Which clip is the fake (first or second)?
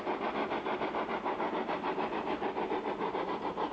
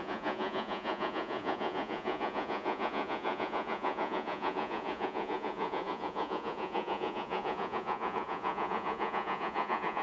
second